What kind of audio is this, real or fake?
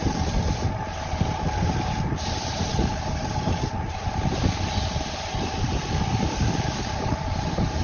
fake